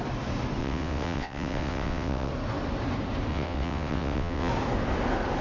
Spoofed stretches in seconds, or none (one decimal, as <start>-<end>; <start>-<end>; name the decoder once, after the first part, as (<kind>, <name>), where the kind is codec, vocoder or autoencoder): 0.6-2.3 (vocoder, WaveNeXt); 3.3-4.5